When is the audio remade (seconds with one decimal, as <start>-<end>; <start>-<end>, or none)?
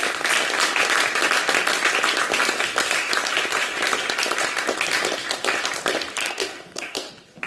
6.2-7.1